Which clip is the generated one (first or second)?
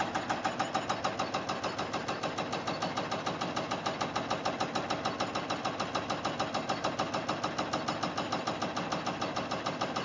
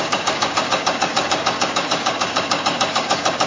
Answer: second